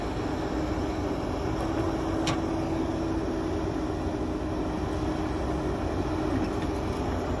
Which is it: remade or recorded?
recorded